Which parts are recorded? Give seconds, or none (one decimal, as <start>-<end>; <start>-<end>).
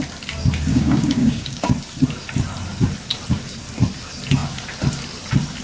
0.0-0.7; 1.7-5.6